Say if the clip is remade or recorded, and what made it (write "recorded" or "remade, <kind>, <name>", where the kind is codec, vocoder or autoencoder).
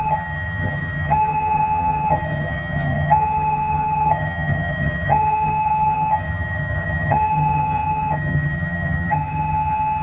remade, vocoder, HiFi-GAN